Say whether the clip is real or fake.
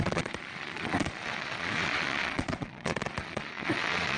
fake